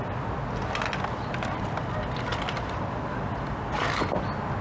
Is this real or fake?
real